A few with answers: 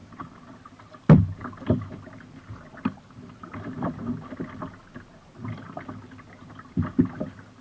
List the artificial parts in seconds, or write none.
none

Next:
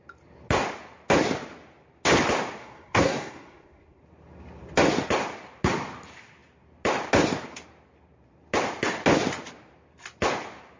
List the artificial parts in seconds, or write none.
2.6-4.0 (codec, SNAC)